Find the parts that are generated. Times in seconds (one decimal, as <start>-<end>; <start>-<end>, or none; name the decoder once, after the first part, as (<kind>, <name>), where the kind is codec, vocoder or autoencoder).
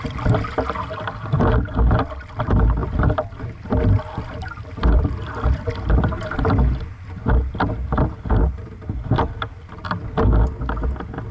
2.8-5.8 (vocoder, BigVGAN v2); 8.6-10.2